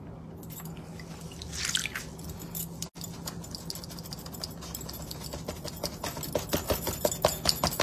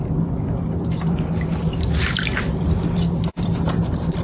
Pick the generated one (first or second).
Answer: second